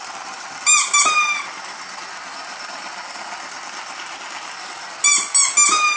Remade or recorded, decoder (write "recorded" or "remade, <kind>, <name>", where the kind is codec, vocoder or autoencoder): recorded